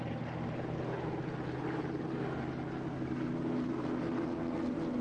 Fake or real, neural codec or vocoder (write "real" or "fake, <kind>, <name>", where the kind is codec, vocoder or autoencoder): real